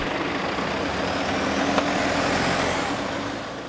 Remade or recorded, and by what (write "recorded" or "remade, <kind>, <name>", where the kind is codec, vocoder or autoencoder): recorded